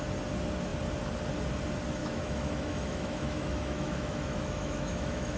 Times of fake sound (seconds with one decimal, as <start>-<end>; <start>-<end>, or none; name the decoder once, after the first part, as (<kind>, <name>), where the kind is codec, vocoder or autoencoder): 2.0-5.4 (autoencoder, DAC-VAE)